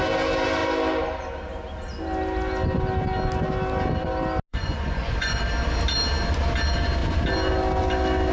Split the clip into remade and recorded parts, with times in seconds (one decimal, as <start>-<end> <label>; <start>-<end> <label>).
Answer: 0.0-4.5 recorded; 4.5-5.4 remade; 5.4-8.3 recorded